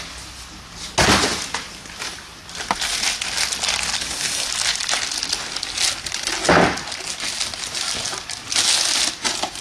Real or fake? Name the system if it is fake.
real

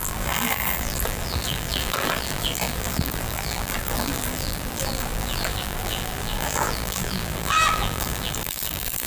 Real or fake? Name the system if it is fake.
fake, vocoder, BigVGAN v2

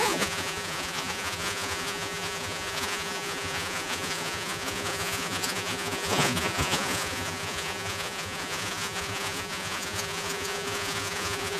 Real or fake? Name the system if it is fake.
fake, vocoder, Vocos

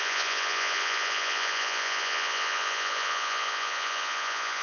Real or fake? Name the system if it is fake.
fake, vocoder, Vocos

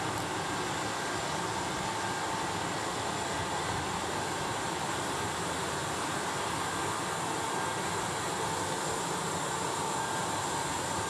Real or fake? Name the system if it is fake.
real